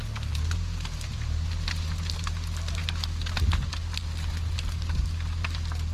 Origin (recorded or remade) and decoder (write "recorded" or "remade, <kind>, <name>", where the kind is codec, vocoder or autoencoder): recorded